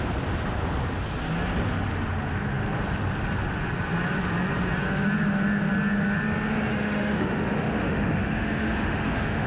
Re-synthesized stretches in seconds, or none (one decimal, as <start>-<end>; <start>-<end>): 6.7-9.5